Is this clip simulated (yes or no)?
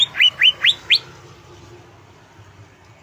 no